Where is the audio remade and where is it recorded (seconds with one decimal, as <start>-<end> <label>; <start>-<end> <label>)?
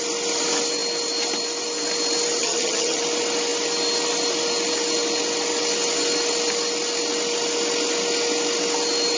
0.0-2.4 recorded; 2.4-3.0 remade; 3.0-9.2 recorded